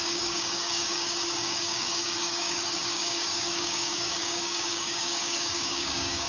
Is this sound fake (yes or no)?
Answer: yes